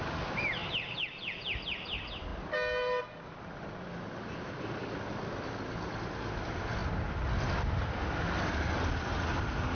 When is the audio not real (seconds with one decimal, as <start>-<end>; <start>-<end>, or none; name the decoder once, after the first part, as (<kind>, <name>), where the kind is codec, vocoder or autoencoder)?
none